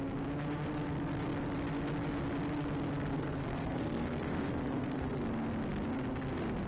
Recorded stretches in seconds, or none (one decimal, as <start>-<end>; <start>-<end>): 0.0-3.1; 5.1-6.7